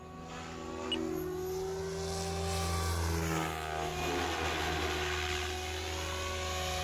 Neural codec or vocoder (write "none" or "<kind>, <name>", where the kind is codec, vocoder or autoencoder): none